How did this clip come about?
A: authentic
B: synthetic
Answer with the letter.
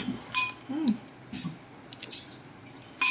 A